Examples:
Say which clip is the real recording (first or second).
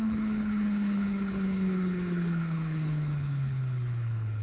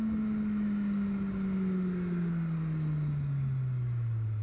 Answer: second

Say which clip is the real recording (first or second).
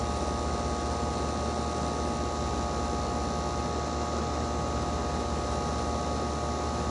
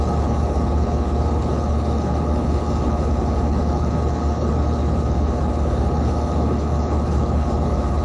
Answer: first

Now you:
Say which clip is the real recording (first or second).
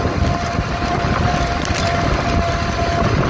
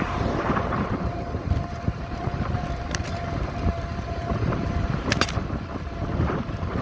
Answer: first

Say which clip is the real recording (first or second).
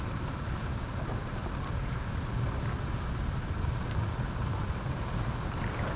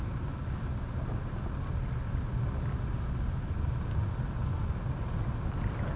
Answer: second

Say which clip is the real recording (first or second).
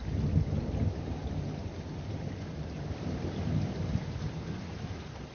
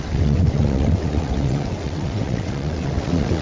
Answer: first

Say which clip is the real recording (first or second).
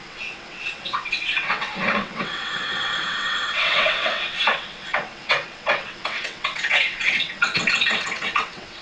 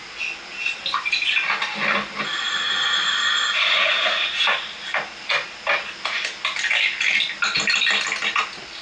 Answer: second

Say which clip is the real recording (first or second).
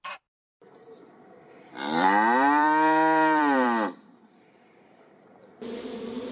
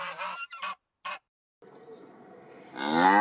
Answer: second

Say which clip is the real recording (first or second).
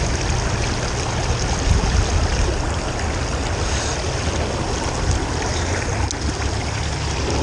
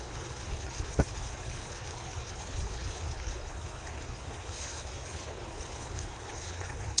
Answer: first